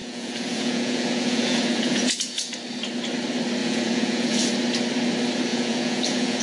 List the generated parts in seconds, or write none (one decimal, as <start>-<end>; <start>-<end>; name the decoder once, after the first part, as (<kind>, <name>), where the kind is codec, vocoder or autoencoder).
0.0-2.5 (vocoder, Vocos); 3.6-4.4; 5.5-6.4